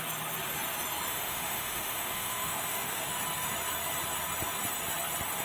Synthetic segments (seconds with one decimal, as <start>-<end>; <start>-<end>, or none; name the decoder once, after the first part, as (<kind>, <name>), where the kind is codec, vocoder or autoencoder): 1.1-3.2 (autoencoder, DAC-VAE)